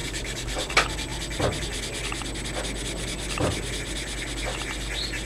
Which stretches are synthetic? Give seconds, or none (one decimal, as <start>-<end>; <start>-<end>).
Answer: 0.0-0.7